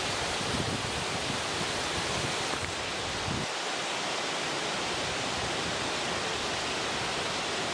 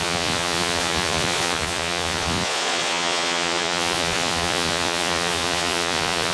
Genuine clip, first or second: first